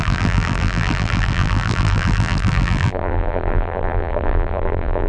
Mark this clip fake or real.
fake